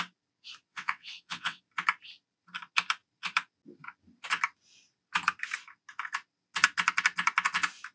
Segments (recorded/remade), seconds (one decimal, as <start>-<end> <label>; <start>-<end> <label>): 0.0-0.7 recorded; 0.7-1.6 remade; 1.6-7.9 recorded

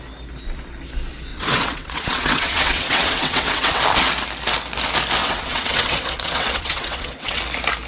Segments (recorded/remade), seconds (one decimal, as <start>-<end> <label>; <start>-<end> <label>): 0.0-1.3 recorded; 1.3-3.8 remade; 3.8-5.2 recorded; 5.2-7.4 remade; 7.4-7.9 recorded

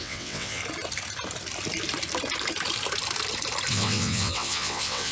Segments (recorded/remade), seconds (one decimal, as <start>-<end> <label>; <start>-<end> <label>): 0.0-0.6 remade; 0.6-3.7 recorded; 3.7-5.1 remade

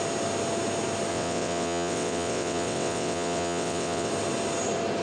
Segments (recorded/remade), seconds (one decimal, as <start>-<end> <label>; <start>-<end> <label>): 0.0-1.1 recorded; 1.1-4.1 remade; 4.1-5.0 recorded

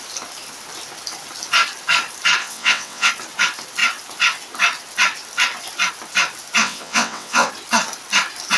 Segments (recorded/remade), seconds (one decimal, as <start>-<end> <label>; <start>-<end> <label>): 0.0-2.4 recorded; 2.4-3.1 remade; 3.1-6.6 recorded; 6.6-7.5 remade; 7.5-8.6 recorded